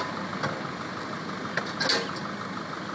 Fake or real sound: real